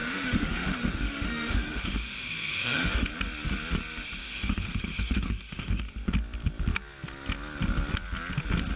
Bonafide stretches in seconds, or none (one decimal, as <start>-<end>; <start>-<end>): 3.1-4.2; 5.8-8.8

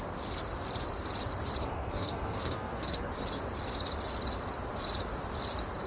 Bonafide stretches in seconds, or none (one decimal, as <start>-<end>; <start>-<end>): 0.0-1.6; 3.1-5.9

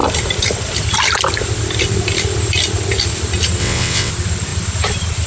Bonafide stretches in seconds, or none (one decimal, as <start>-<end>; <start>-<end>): 0.0-3.6; 4.1-5.3

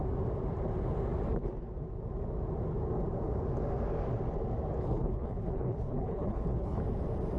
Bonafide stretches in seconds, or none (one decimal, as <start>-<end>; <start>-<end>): 0.0-4.8; 6.8-7.4

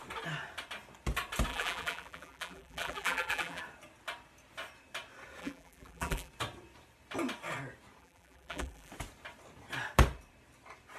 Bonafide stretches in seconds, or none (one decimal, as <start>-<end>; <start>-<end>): 0.0-1.5; 3.6-5.4; 6.3-8.0; 8.9-11.0

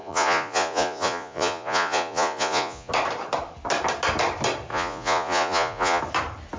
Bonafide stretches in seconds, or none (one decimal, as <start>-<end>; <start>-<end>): 2.9-4.7; 6.0-6.6

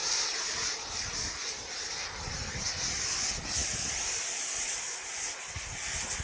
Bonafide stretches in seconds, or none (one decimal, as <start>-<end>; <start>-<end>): 0.0-6.2

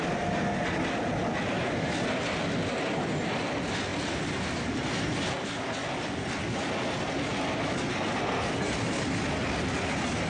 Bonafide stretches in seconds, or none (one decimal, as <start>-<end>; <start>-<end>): 0.0-10.3